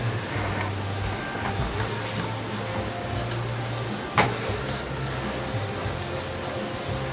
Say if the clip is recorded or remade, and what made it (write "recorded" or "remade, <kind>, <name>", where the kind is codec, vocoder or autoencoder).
recorded